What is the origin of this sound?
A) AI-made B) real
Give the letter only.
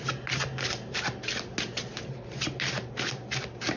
B